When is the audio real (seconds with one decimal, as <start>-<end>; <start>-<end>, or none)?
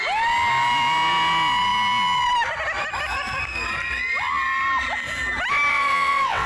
0.0-5.7